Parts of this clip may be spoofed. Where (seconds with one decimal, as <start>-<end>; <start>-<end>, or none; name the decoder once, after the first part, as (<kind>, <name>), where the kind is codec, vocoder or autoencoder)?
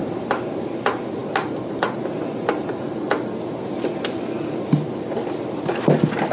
none